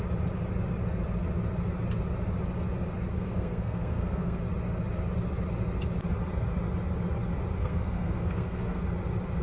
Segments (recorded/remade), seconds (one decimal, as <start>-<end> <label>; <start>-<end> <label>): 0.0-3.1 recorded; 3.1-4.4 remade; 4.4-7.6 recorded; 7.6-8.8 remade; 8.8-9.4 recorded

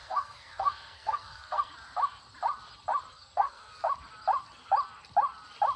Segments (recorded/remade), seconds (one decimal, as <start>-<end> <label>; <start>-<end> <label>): 0.0-1.7 remade; 1.7-3.1 recorded; 3.1-3.8 remade; 3.8-5.8 recorded

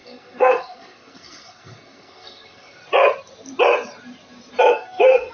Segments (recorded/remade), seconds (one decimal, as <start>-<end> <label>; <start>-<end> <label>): 0.0-2.8 remade; 2.8-4.6 recorded; 4.6-5.3 remade

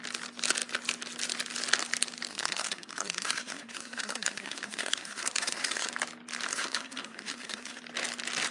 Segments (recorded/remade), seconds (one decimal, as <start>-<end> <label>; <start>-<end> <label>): 0.0-2.3 recorded; 2.3-5.9 remade; 5.9-6.5 recorded; 6.5-7.8 remade; 7.8-8.5 recorded

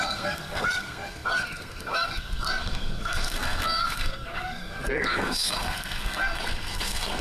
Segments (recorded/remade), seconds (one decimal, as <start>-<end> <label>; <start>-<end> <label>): 0.0-7.2 remade

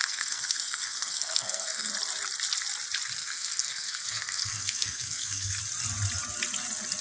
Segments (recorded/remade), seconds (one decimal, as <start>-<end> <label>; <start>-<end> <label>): 0.0-1.9 remade; 1.9-3.2 recorded; 3.2-5.6 remade; 5.6-7.0 recorded